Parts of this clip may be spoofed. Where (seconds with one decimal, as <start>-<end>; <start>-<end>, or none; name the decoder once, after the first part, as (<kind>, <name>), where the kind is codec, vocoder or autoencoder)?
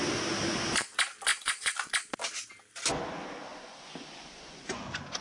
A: 1.3-1.9 (vocoder, Vocos); 3.4-5.2